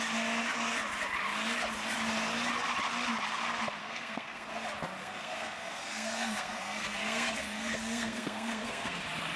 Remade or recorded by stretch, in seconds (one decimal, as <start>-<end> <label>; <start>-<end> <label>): 0.0-3.8 recorded; 3.8-4.5 remade; 4.5-5.0 recorded; 5.0-9.0 remade; 9.0-9.4 recorded